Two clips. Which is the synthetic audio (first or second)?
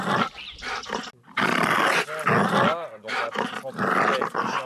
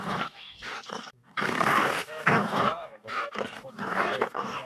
second